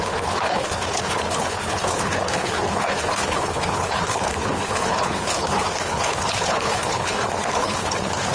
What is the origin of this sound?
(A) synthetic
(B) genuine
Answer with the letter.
A